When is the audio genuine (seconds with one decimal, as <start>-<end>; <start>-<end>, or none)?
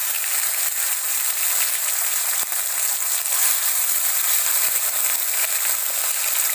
3.1-6.5